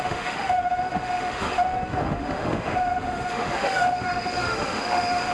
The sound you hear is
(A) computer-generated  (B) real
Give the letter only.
A